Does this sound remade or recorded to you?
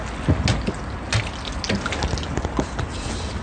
recorded